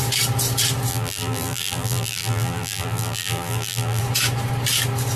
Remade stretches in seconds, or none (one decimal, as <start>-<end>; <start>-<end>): 0.9-4.0